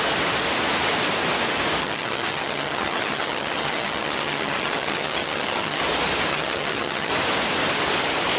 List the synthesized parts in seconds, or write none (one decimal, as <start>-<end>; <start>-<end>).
1.8-5.8; 6.3-7.1